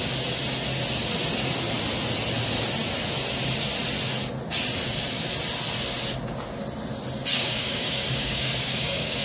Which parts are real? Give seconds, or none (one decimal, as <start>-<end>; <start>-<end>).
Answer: 0.0-7.3